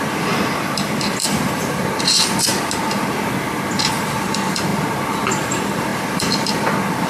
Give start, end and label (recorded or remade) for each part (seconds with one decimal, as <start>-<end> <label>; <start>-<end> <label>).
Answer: 0.0-2.5 remade; 2.5-3.9 recorded; 3.9-4.7 remade; 4.7-5.3 recorded; 5.3-7.1 remade